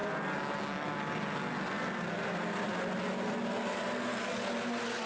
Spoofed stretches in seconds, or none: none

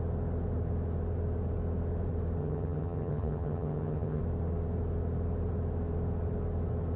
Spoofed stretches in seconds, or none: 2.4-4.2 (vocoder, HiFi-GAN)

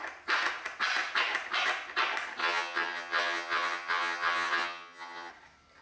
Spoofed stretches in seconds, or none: 2.4-5.3 (vocoder, HiFi-GAN)